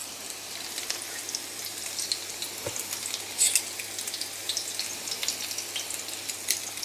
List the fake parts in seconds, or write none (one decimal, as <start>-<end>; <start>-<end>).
0.0-2.2